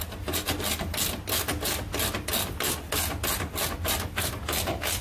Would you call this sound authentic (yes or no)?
yes